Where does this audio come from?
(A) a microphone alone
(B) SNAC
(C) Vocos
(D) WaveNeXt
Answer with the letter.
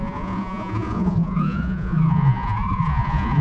C